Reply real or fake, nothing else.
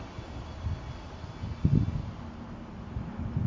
real